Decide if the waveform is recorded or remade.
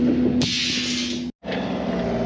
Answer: recorded